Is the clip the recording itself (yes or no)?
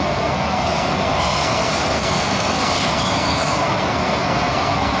no